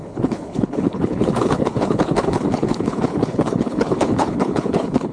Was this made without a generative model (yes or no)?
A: no